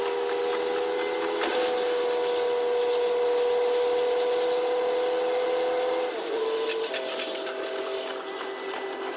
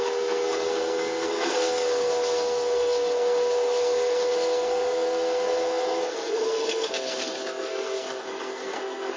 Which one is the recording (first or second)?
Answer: first